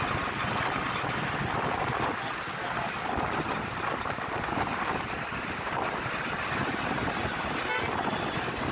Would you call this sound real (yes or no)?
yes